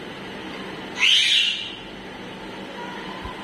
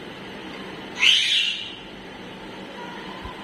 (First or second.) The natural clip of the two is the first